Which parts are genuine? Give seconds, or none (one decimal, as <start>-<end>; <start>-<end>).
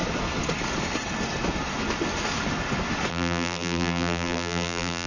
0.0-3.1